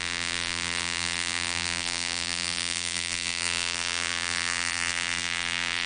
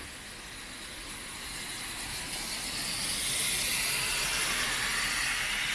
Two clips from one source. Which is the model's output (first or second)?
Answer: first